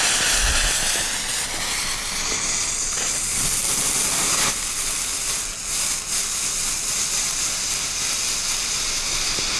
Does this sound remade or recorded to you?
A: recorded